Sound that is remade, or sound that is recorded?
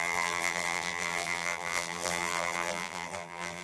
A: remade